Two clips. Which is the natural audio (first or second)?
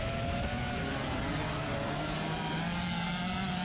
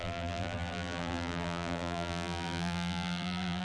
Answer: first